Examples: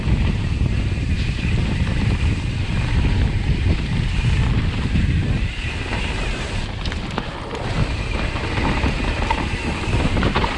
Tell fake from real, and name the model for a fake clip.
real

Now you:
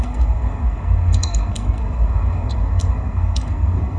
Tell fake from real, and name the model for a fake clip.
fake, codec, SNAC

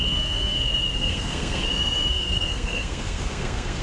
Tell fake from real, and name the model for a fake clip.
fake, codec, SNAC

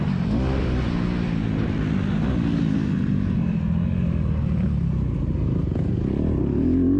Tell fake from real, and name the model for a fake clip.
real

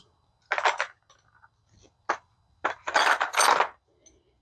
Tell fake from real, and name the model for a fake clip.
real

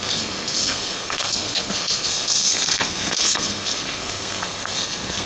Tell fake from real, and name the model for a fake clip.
fake, codec, SNAC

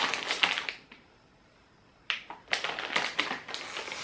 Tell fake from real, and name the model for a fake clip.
real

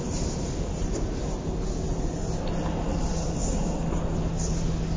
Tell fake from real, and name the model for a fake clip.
real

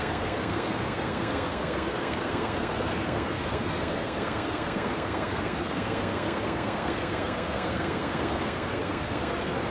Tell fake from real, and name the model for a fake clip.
fake, codec, SNAC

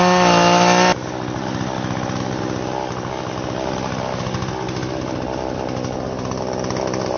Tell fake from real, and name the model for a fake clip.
real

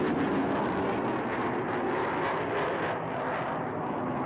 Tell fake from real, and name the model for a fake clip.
real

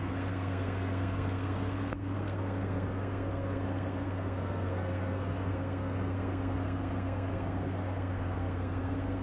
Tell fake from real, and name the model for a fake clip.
fake, codec, SNAC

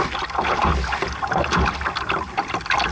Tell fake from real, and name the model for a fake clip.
real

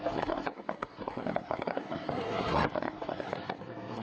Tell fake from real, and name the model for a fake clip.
fake, codec, SNAC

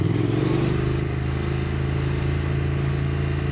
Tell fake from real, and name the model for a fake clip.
real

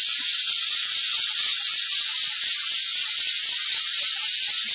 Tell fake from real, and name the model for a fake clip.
real